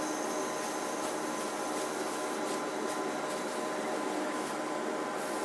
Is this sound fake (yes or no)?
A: no